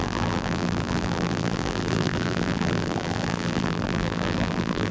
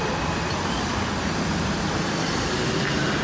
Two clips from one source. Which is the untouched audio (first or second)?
second